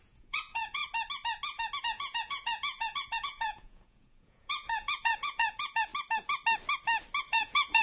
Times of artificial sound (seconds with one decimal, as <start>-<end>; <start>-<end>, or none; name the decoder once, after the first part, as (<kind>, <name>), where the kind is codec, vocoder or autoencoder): 0.0-0.8 (vocoder, Vocos); 1.8-5.9; 7.2-7.8